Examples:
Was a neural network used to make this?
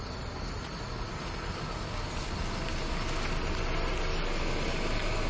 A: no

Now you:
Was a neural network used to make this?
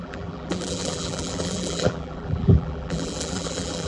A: yes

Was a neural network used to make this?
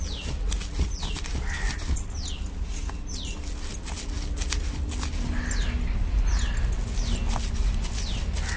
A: no